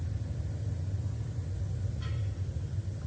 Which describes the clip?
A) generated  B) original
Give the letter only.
B